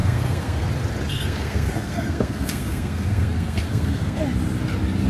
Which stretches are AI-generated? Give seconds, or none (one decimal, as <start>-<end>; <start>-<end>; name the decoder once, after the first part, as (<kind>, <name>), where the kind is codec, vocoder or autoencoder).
0.0-0.7 (codec, SNAC); 1.1-4.2